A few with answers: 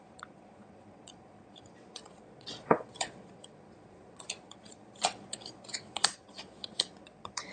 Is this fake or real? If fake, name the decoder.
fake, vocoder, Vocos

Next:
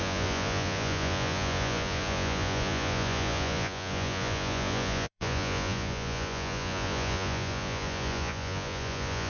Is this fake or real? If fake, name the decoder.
fake, vocoder, Vocos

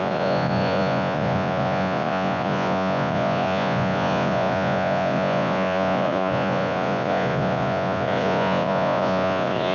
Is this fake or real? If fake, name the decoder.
fake, vocoder, Vocos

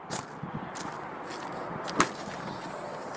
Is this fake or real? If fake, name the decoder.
real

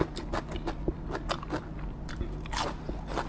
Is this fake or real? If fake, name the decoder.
real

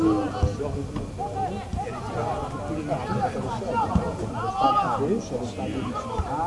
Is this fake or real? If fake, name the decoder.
real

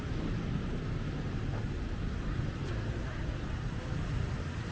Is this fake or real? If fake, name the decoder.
real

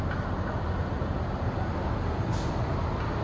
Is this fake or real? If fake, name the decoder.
real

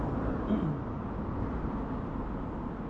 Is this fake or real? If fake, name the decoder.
real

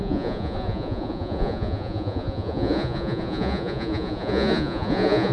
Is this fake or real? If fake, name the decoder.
fake, vocoder, Vocos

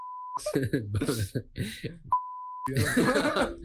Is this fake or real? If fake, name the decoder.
real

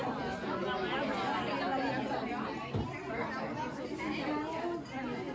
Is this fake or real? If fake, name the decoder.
real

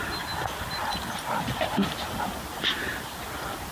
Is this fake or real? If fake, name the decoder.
real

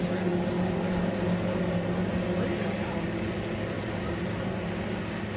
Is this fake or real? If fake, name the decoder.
real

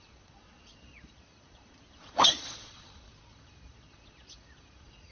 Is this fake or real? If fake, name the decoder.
fake, vocoder, Vocos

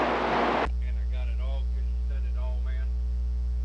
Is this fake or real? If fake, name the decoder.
real